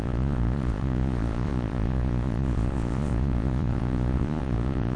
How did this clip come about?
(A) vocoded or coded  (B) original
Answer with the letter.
A